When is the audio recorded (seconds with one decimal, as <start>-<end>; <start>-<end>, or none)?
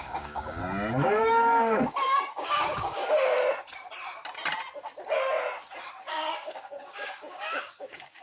0.6-1.2; 3.0-6.0